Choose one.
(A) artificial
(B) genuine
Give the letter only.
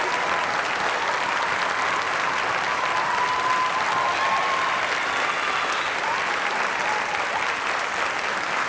B